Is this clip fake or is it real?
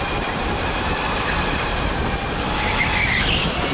real